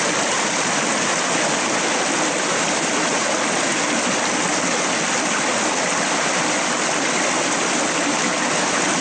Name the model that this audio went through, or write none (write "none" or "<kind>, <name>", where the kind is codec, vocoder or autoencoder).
none